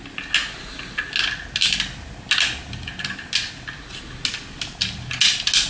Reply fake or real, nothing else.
real